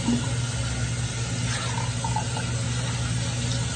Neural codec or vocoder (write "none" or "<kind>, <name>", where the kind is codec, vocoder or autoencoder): none